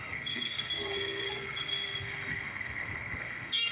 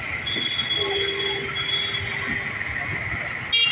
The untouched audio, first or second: second